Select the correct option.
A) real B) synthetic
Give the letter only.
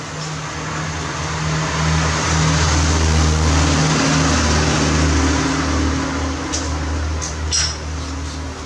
A